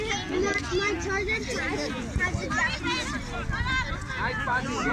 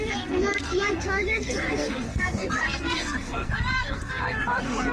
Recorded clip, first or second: first